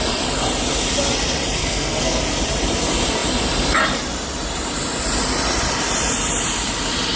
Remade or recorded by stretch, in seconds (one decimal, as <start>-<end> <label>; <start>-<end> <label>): 0.0-1.6 recorded; 1.6-2.2 remade; 2.2-7.2 recorded